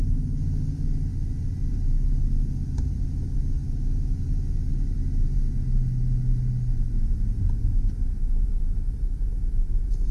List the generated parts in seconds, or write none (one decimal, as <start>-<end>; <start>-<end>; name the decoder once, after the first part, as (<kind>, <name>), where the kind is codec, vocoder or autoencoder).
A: none

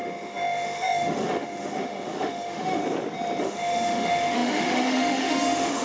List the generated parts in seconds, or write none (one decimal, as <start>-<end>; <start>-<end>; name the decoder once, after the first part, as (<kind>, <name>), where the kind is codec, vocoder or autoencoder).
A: 0.0-2.8 (autoencoder, DAC-VAE); 3.4-5.8

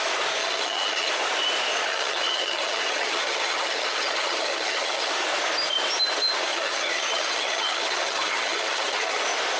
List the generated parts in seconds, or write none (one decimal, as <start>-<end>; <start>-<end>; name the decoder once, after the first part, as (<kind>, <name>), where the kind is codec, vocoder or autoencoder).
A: 0.4-1.1 (vocoder, HiFi-GAN); 1.9-5.1; 6.5-9.2

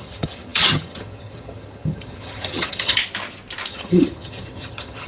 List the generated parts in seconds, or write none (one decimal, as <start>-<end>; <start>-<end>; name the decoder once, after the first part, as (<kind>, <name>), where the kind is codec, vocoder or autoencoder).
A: 0.0-3.0 (vocoder, HiFi-GAN); 3.7-5.1

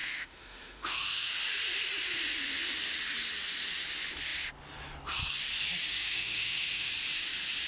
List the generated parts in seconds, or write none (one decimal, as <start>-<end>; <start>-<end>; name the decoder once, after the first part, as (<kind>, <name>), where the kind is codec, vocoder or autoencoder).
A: 0.0-1.3 (autoencoder, DAC-VAE); 5.9-6.9

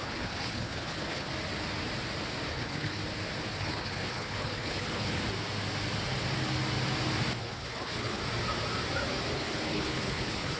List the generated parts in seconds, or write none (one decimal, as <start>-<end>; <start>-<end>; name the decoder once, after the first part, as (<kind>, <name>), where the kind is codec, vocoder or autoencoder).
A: 0.0-1.3 (codec, HILCodec); 2.5-3.0; 3.6-5.2; 7.4-8.2; 9.3-10.6